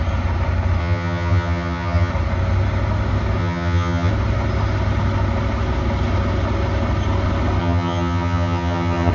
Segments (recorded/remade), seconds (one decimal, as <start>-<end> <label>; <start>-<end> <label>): 0.0-0.8 recorded; 0.8-2.1 remade; 2.1-3.4 recorded; 3.4-4.1 remade; 4.1-7.6 recorded; 7.6-9.1 remade